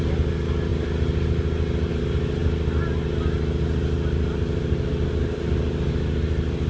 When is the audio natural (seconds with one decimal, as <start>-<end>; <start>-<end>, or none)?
0.0-6.7